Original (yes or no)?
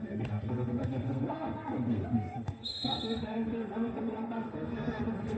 no